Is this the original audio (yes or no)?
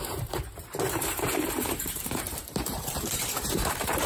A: no